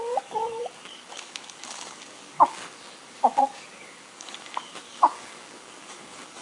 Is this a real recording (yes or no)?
no